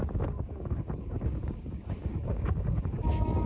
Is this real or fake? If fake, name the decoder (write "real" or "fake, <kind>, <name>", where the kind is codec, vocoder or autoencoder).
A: fake, codec, DAC